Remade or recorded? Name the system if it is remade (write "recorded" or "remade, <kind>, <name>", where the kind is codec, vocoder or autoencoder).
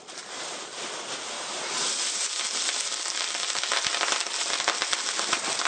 recorded